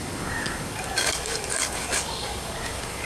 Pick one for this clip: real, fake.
fake